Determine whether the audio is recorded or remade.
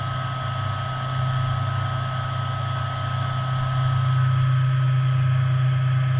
recorded